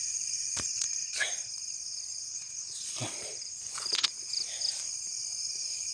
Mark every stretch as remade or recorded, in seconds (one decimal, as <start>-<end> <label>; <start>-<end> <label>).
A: 0.0-0.7 recorded; 0.7-1.5 remade; 1.5-2.3 recorded; 2.3-4.1 remade; 4.1-5.9 recorded